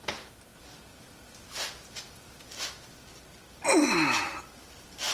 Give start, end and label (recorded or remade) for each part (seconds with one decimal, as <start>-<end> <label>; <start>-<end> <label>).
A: 0.0-5.1 recorded